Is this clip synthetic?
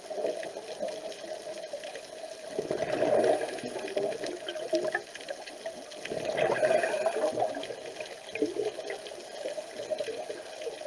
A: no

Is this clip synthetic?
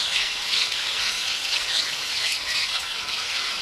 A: yes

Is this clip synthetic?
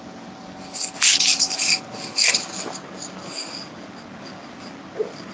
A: no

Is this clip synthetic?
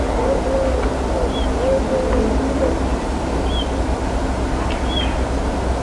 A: no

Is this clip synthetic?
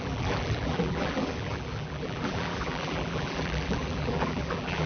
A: yes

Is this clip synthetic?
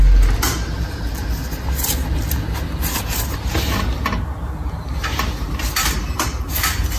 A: no